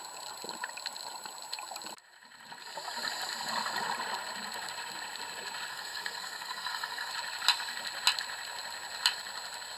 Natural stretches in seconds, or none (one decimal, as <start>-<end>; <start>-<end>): 0.0-5.7; 7.1-9.8